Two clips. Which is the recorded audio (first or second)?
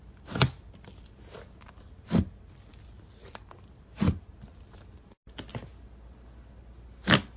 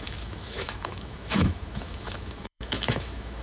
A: first